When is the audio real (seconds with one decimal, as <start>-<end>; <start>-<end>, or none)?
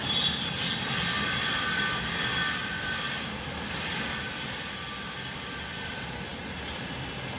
0.0-7.4